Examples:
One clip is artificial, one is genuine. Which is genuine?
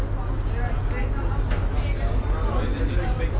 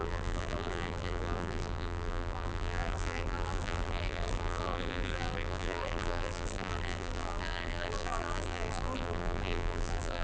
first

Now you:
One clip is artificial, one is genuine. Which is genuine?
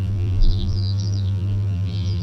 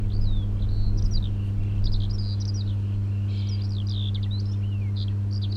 second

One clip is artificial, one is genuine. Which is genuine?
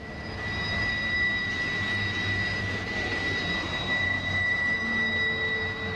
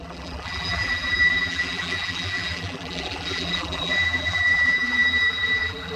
first